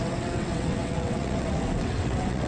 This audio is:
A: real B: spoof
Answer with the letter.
B